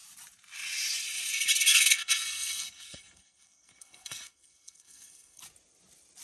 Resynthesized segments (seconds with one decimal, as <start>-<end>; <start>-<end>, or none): 1.7-5.4